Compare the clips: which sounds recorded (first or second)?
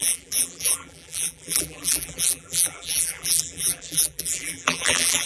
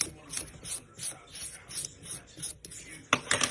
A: second